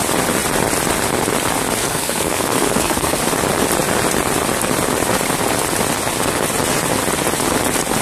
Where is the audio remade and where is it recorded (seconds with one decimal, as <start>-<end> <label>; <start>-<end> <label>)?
0.0-1.8 recorded; 1.8-3.2 remade; 3.2-8.0 recorded